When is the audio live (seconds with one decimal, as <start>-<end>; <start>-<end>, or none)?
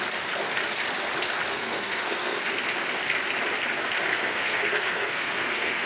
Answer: 0.0-1.5; 2.4-4.1